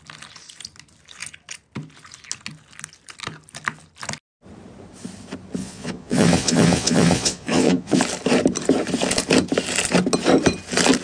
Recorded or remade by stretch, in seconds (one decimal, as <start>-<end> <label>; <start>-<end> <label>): 0.0-5.6 recorded; 5.6-8.0 remade; 8.0-11.0 recorded

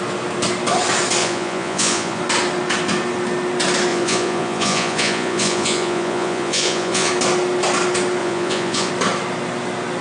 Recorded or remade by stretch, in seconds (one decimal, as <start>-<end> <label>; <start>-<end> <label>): 0.0-1.2 recorded; 1.2-2.2 remade; 2.2-3.9 recorded; 3.9-7.1 remade; 7.1-8.2 recorded; 8.2-8.9 remade; 8.9-10.0 recorded

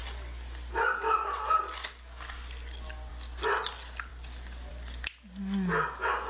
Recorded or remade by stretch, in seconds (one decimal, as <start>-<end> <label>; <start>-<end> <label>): 0.0-6.3 recorded